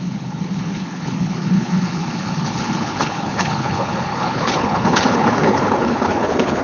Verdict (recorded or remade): remade